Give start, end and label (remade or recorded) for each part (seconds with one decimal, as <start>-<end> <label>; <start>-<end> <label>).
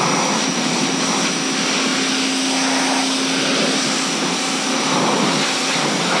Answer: 0.0-6.2 recorded